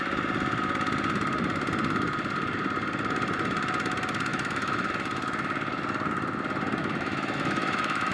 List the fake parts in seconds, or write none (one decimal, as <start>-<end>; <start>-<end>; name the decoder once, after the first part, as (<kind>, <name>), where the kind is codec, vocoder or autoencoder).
4.3-4.9 (autoencoder, DAC-VAE); 6.8-8.1